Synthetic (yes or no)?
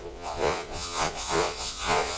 yes